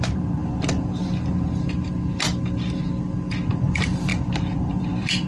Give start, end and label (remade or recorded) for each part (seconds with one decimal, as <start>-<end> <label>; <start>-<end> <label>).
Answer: 0.0-0.4 remade; 0.4-3.6 recorded; 3.6-4.1 remade; 4.1-4.8 recorded; 4.8-5.3 remade